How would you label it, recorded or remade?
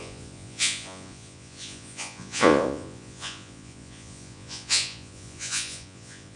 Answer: remade